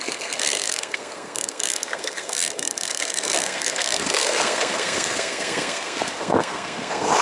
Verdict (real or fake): fake